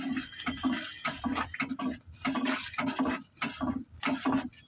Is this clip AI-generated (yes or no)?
yes